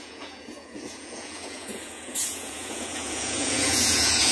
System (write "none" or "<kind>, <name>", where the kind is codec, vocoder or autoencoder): vocoder, Vocos